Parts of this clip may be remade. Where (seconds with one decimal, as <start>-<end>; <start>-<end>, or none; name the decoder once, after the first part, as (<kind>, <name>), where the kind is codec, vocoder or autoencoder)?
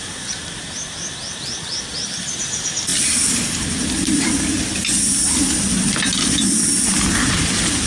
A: none